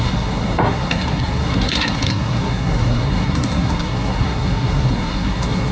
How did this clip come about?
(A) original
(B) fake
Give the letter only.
B